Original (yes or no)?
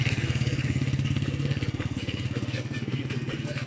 no